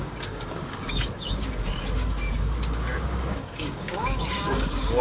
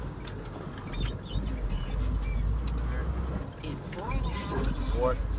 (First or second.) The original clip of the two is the second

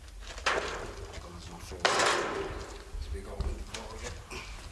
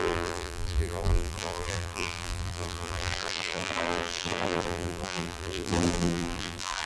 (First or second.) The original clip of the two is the first